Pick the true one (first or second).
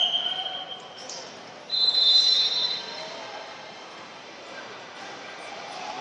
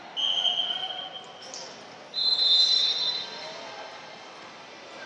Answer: second